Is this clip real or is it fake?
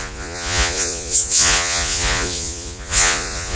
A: fake